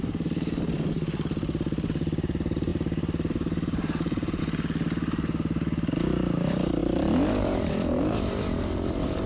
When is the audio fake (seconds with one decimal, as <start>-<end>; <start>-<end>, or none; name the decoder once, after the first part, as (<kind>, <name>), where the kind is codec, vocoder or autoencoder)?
0.0-9.3 (vocoder, BigVGAN v2)